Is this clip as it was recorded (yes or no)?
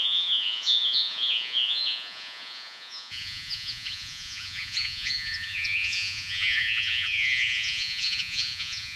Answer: no